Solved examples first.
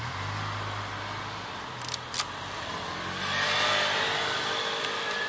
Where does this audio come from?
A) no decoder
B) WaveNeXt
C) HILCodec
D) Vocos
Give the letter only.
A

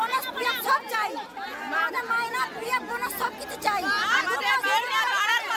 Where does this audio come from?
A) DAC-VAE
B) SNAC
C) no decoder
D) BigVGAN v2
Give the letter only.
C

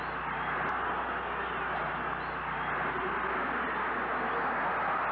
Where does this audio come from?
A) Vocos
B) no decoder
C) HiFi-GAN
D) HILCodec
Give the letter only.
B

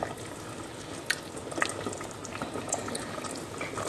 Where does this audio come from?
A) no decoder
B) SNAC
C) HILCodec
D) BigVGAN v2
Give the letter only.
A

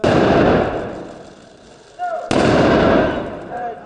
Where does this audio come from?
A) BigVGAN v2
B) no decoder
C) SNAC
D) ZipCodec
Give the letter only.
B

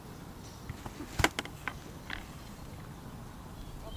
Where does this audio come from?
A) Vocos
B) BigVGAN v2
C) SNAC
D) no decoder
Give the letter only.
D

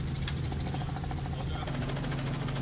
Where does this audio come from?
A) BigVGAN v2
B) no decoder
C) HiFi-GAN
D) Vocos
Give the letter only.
B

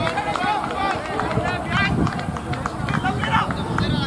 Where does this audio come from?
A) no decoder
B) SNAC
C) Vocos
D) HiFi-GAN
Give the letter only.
A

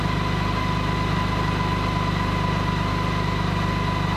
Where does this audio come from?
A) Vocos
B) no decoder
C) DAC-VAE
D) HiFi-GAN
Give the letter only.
B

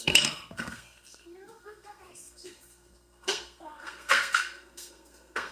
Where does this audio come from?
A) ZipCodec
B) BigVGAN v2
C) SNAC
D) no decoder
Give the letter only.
C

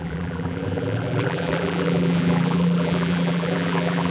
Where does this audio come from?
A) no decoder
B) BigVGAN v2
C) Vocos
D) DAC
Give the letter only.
B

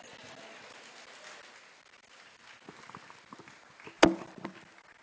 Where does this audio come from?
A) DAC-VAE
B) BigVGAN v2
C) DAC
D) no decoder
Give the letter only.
D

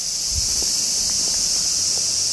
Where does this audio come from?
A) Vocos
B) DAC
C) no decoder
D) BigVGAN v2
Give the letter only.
C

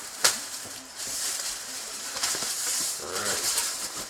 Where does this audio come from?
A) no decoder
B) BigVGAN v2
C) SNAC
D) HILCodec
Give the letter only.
B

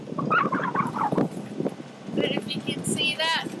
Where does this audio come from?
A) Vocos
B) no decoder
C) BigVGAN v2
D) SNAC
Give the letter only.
B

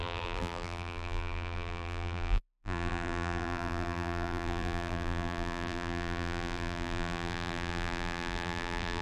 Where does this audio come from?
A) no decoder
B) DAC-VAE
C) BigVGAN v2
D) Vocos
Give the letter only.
C